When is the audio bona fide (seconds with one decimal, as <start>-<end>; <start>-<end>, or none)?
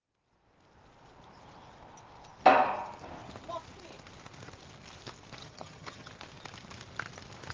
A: 0.0-5.4; 6.1-7.5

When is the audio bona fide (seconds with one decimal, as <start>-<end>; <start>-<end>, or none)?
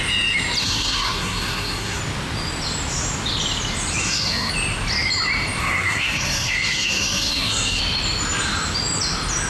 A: 0.0-0.6; 2.0-4.0; 4.5-5.6; 7.8-9.5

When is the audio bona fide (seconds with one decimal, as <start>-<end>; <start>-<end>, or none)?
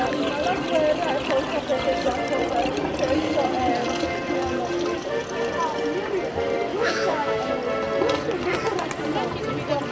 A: 0.0-6.7; 7.5-9.9